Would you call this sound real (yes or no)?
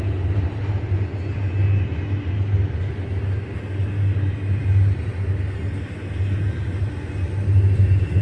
yes